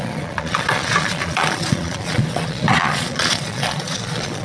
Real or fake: fake